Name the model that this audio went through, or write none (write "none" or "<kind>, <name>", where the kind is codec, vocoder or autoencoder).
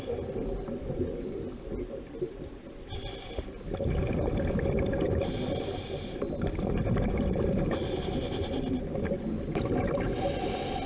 none